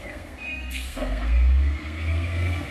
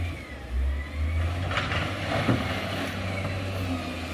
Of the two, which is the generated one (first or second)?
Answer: first